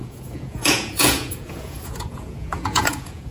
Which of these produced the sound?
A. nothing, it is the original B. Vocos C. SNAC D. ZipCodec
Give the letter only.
B